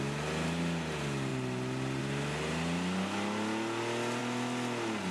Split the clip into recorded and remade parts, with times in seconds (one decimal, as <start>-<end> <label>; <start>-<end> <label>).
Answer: 0.0-5.1 recorded